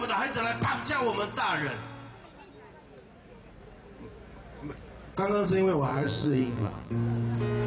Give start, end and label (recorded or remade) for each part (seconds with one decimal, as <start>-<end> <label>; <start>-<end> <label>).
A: 0.0-5.9 recorded; 5.9-6.9 remade; 6.9-7.7 recorded